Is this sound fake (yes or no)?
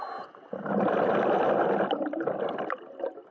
no